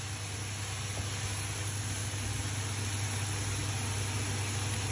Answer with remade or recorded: recorded